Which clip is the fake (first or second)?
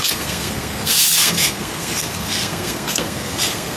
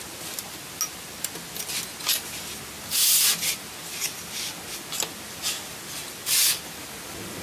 first